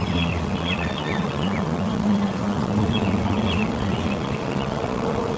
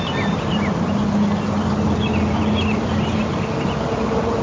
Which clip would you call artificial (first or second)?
first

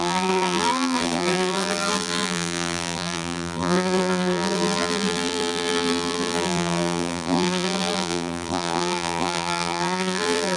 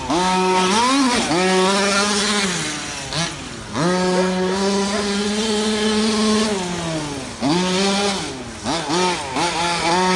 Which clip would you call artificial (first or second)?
first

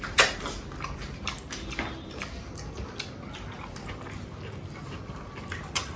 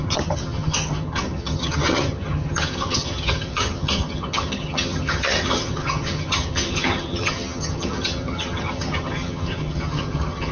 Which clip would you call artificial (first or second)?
second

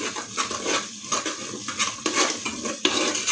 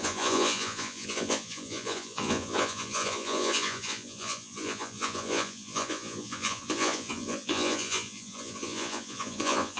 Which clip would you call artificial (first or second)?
second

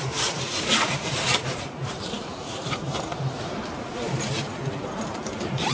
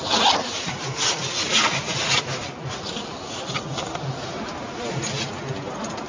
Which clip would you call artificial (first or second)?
first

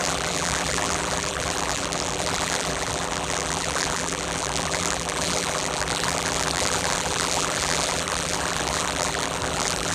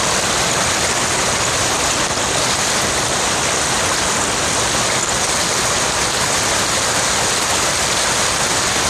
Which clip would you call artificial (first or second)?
first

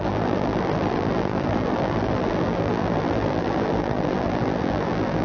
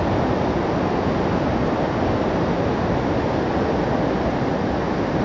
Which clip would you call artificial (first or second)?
first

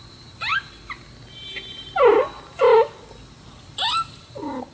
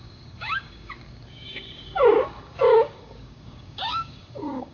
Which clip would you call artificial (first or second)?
second